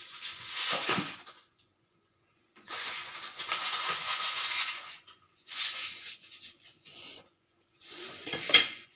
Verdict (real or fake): fake